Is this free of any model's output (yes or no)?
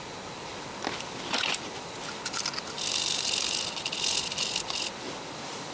yes